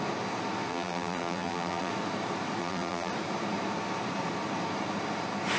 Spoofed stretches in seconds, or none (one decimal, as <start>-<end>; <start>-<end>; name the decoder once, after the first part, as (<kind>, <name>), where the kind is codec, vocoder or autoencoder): 0.7-1.9 (vocoder, BigVGAN v2); 2.6-3.1